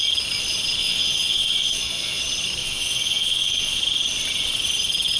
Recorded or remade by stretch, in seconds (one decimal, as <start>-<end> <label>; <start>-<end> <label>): 0.0-0.8 recorded; 0.8-2.2 remade; 2.2-2.6 recorded; 2.6-3.8 remade; 3.8-5.2 recorded